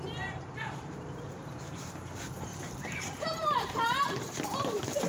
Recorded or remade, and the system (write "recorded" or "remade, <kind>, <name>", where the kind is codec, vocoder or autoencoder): remade, vocoder, BigVGAN v2